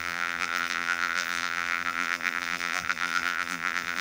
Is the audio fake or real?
fake